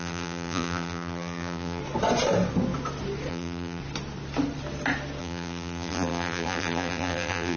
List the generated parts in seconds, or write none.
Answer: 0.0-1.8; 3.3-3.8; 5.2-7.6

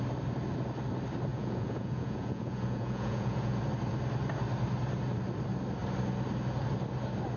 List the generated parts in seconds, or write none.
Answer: 1.3-3.6

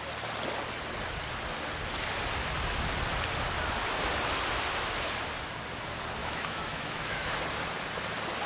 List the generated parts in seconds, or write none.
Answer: 6.2-7.4

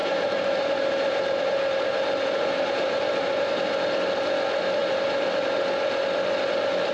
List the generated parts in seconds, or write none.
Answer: 0.0-3.5; 4.8-5.3

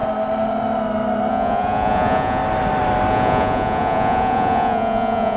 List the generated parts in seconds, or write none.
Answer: 1.3-2.4; 3.1-5.4

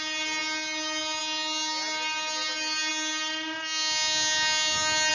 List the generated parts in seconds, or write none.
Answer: none

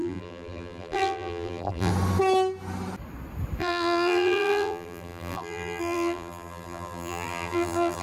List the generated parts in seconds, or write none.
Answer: 0.0-1.9; 3.6-8.0

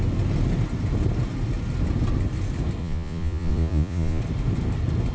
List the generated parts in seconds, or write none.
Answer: 2.8-4.2